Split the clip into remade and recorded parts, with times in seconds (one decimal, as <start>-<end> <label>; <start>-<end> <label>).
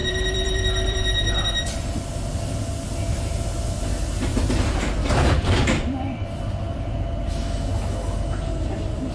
0.0-2.0 remade; 2.0-4.3 recorded; 4.3-7.0 remade; 7.0-9.1 recorded